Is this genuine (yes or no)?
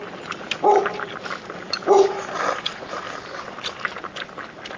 no